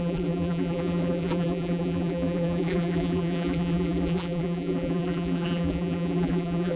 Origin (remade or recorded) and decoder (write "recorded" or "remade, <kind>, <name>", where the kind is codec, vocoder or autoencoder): remade, vocoder, BigVGAN v2